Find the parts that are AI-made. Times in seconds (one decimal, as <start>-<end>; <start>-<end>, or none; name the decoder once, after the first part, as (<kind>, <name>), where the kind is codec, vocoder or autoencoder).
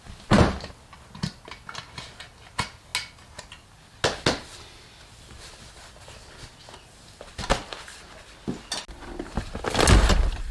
none